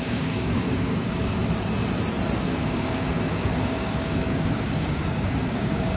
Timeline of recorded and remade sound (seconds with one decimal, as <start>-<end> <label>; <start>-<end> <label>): 0.0-1.3 remade; 1.3-2.4 recorded; 2.4-6.0 remade